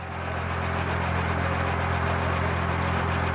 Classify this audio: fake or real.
real